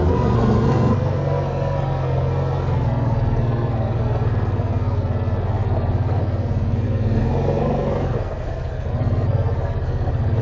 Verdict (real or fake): fake